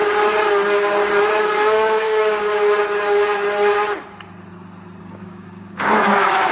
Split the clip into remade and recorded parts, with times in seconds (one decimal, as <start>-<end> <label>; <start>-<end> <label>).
0.0-1.4 recorded; 1.4-2.5 remade; 2.5-5.0 recorded; 5.0-6.5 remade